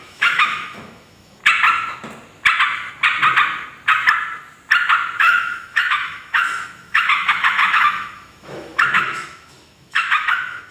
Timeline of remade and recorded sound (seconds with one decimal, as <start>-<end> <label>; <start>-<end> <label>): 0.0-1.4 remade; 1.4-5.2 recorded; 5.2-10.7 remade